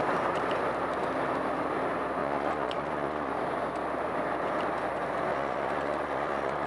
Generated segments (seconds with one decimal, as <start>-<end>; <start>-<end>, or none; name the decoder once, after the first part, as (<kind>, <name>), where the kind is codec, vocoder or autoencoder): 2.2-3.3 (vocoder, Vocos); 5.3-6.7